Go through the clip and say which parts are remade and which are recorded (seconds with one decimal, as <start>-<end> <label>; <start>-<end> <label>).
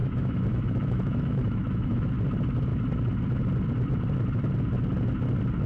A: 0.0-2.1 remade; 2.1-5.7 recorded